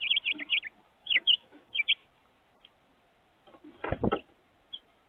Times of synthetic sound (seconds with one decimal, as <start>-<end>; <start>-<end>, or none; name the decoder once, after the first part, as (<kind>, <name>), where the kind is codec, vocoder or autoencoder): 1.0-1.9 (codec, DAC)